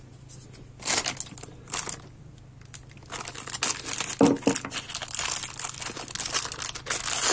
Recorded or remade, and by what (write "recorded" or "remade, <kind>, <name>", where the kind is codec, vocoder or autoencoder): recorded